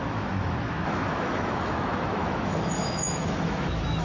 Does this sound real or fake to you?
fake